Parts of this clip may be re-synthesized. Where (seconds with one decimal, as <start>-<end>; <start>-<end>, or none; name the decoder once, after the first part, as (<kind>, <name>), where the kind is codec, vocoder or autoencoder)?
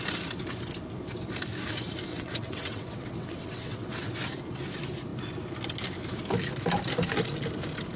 2.1-4.1 (vocoder, WaveNeXt)